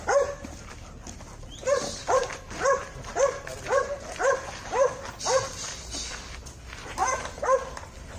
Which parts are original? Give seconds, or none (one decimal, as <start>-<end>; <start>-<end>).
0.0-8.2